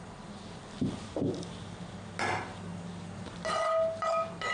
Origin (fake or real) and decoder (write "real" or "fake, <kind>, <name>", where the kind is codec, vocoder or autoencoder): real